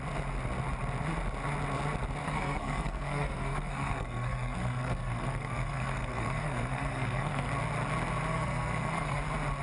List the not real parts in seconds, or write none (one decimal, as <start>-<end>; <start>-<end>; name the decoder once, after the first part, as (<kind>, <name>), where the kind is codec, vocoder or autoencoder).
2.2-7.5 (codec, SNAC); 8.3-9.2